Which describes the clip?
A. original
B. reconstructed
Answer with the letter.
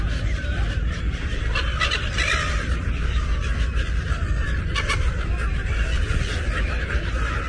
A